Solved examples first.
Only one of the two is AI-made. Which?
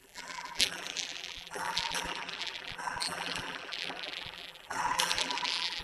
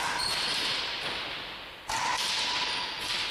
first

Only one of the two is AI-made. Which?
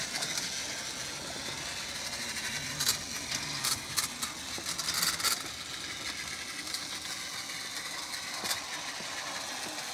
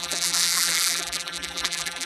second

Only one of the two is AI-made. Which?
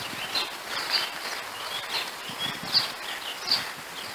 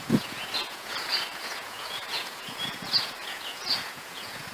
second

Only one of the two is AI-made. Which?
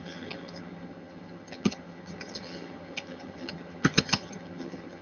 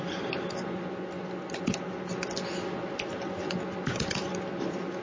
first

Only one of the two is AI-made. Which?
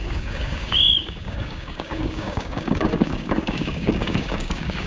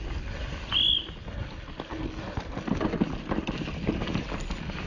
first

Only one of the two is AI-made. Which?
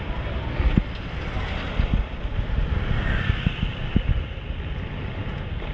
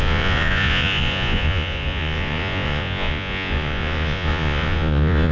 second